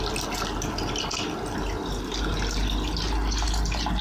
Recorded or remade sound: recorded